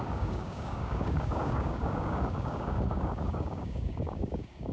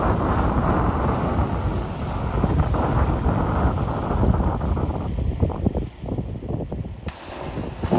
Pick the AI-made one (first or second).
first